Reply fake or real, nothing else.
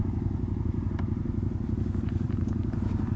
fake